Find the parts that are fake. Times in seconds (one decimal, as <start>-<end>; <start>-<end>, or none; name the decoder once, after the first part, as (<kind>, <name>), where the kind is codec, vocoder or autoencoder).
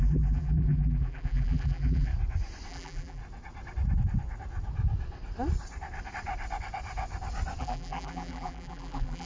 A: 0.0-2.1 (vocoder, BigVGAN v2); 2.7-3.2; 7.6-9.3